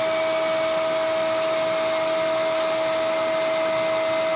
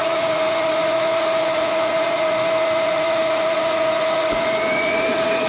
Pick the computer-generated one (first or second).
second